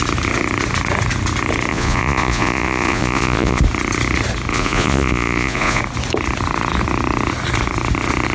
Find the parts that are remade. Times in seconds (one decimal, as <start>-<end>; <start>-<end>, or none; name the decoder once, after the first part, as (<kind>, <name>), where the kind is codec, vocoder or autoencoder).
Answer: 1.7-3.6 (vocoder, Vocos); 4.5-5.8